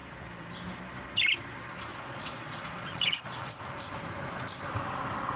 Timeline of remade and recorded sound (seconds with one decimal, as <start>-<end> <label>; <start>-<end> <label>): 0.0-1.9 recorded; 1.9-3.6 remade; 3.6-5.4 recorded